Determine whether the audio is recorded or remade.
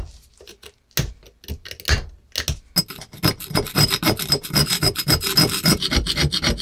recorded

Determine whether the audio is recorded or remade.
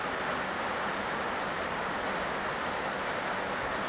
recorded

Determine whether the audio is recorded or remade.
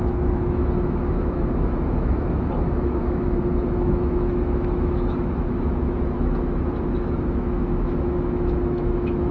remade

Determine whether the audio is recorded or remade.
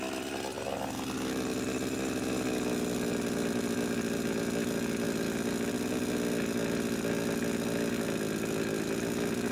recorded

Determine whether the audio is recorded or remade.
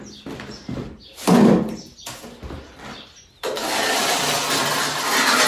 recorded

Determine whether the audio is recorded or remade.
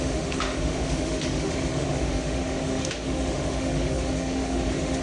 remade